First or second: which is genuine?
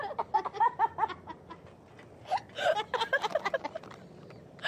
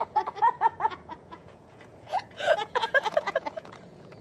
first